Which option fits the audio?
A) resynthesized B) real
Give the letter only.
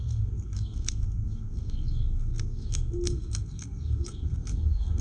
A